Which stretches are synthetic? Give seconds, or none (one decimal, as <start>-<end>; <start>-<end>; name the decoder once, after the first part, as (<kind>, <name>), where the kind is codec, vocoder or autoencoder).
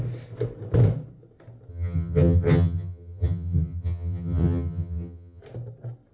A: 1.7-5.4 (vocoder, HiFi-GAN)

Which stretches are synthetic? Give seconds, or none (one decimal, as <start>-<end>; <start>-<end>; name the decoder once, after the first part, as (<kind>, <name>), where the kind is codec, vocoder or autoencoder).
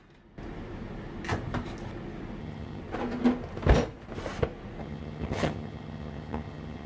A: 2.4-2.8 (vocoder, HiFi-GAN); 4.8-6.9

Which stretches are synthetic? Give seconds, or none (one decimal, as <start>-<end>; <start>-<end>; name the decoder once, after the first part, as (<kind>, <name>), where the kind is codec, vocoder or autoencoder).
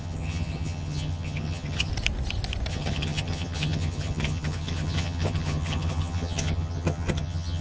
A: 0.0-1.9 (vocoder, HiFi-GAN); 2.7-7.6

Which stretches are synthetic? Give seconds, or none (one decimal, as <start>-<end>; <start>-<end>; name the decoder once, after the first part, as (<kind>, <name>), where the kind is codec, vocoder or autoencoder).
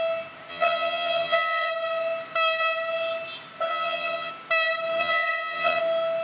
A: 0.5-1.7 (vocoder, HiFi-GAN); 3.7-4.3; 5.0-5.8